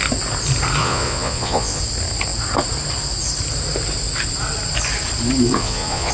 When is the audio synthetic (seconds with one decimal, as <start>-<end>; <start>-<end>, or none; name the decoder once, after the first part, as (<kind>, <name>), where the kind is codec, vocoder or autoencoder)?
0.8-1.8 (vocoder, Vocos); 5.5-6.1